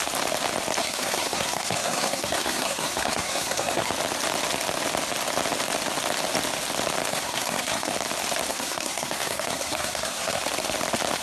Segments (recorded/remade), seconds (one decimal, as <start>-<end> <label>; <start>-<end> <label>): 0.0-0.8 recorded; 0.8-3.9 remade; 3.9-7.1 recorded; 7.1-7.9 remade; 7.9-8.5 recorded; 8.5-10.4 remade; 10.4-11.2 recorded

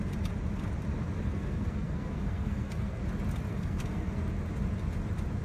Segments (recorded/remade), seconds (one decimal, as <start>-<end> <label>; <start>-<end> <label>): 0.0-1.2 recorded; 1.2-3.0 remade; 3.0-3.5 recorded; 3.5-4.3 remade; 4.3-5.4 recorded

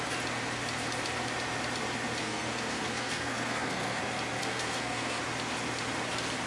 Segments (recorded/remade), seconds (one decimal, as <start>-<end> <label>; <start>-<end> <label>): 0.0-2.2 recorded; 2.2-4.0 remade; 4.0-4.4 recorded; 4.4-5.2 remade; 5.2-6.5 recorded

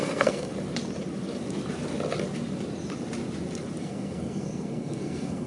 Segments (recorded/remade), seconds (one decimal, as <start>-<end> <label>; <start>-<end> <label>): 0.0-0.5 remade; 0.5-3.8 recorded; 3.8-5.5 remade

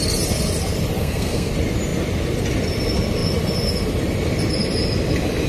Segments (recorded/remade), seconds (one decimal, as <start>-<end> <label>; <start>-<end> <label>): 0.0-1.0 recorded; 1.0-1.5 remade; 1.5-5.5 recorded

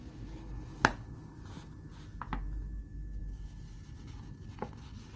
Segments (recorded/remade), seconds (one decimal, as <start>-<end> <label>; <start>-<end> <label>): 0.0-5.2 recorded

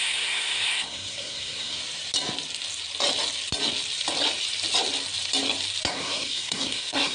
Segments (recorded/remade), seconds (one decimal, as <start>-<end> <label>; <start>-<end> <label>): 0.0-1.8 remade; 1.8-5.9 recorded; 5.9-7.1 remade

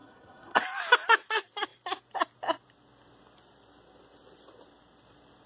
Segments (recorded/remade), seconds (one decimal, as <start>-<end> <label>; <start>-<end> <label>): 0.0-0.6 remade; 0.6-5.5 recorded